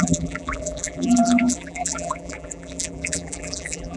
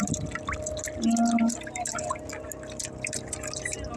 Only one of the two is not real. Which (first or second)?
first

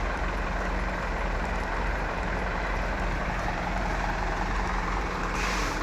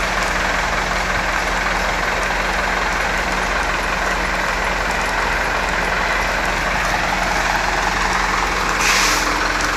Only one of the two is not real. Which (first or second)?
first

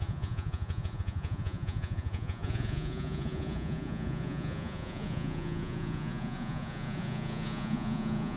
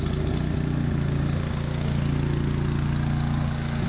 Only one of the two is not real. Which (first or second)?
first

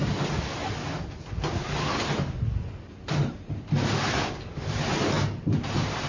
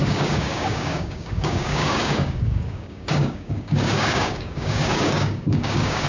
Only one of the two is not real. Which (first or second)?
second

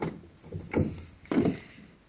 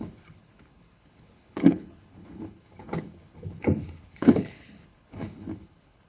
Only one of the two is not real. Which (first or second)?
second